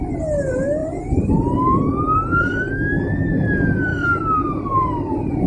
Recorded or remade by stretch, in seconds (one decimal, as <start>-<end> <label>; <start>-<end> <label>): 0.0-0.8 recorded; 0.8-2.7 remade; 2.7-3.9 recorded; 3.9-4.9 remade; 4.9-5.5 recorded